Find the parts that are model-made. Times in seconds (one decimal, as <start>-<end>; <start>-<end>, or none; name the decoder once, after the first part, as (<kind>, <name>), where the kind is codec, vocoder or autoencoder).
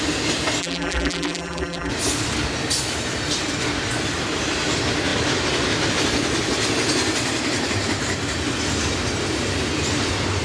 0.6-1.9 (vocoder, BigVGAN v2)